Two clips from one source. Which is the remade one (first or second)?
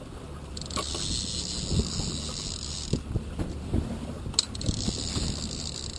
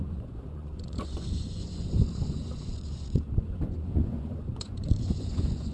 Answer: second